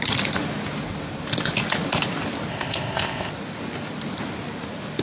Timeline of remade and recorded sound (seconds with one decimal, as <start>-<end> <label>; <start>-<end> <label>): 0.0-2.5 recorded; 2.5-3.3 remade; 3.3-5.0 recorded